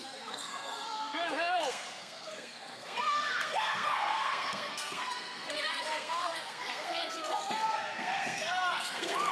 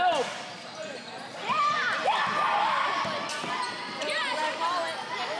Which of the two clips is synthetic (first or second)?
first